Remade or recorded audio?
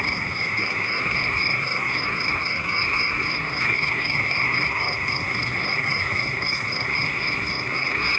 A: remade